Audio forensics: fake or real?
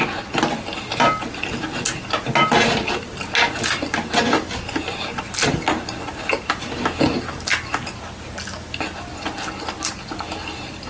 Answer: real